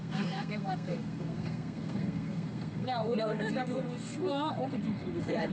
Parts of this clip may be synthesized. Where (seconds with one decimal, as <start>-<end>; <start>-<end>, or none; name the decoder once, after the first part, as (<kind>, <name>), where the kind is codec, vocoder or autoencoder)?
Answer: 0.0-5.5 (codec, SNAC)